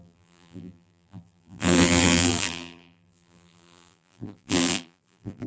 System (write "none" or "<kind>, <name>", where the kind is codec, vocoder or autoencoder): vocoder, BigVGAN v2